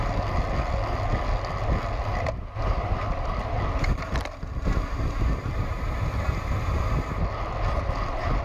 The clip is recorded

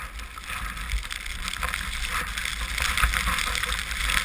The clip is recorded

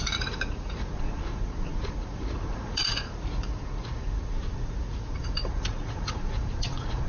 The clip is remade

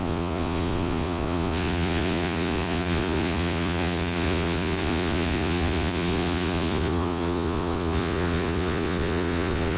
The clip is remade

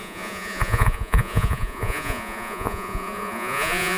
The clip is remade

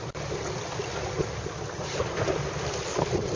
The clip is recorded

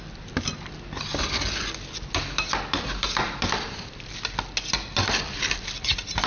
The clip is recorded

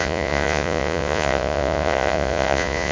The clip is remade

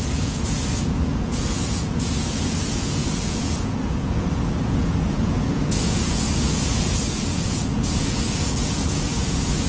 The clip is remade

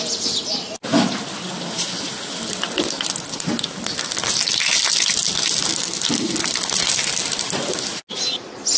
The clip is recorded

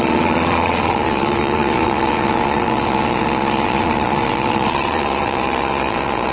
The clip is remade